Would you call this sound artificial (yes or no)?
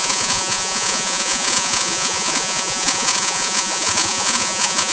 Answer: yes